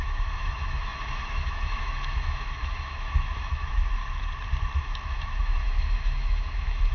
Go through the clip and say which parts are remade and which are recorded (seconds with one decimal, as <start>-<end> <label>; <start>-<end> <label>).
0.0-4.0 remade; 4.0-4.8 recorded; 4.8-6.9 remade